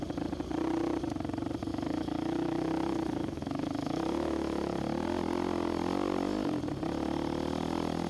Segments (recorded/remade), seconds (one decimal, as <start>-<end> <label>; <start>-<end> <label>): 0.0-1.7 recorded; 1.7-4.8 remade; 4.8-8.1 recorded